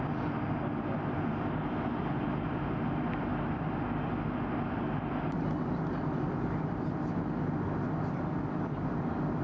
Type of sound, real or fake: real